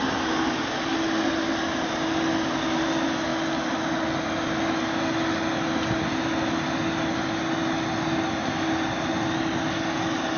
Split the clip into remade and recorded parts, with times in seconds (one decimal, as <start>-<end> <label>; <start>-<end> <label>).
0.0-10.4 recorded